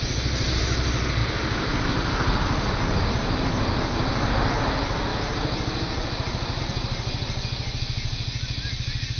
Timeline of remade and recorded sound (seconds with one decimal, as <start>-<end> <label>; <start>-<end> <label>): 0.0-5.1 recorded; 5.1-6.6 remade; 6.6-9.2 recorded